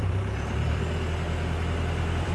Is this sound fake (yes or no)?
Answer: yes